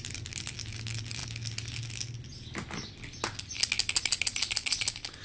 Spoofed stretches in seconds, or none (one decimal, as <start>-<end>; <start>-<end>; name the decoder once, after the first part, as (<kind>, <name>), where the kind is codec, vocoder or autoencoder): none